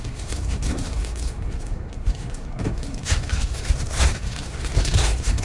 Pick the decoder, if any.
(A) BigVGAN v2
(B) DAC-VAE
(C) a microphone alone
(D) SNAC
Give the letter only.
D